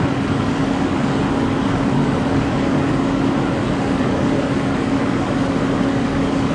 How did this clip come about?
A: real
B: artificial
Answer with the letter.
B